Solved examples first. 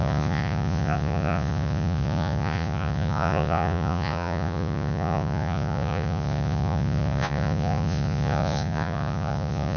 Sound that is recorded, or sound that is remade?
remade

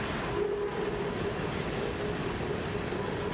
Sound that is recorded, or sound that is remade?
recorded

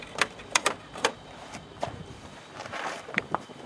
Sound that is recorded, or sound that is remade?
remade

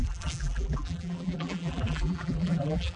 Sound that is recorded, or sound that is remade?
remade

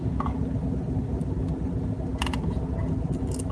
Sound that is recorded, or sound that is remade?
recorded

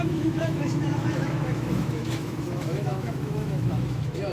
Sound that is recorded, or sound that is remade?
remade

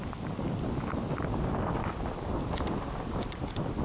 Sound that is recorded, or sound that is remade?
recorded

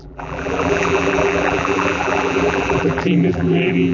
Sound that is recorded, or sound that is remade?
remade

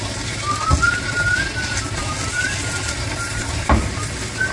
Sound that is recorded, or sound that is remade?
recorded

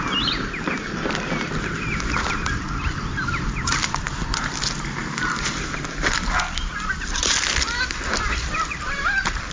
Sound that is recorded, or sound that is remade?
recorded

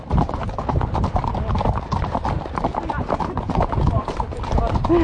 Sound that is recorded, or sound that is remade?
recorded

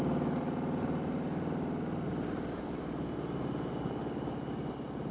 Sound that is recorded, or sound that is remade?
recorded